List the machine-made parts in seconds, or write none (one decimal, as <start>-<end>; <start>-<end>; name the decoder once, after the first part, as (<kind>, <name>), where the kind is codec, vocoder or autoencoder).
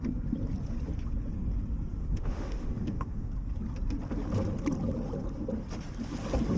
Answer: 2.0-3.3 (autoencoder, DAC-VAE)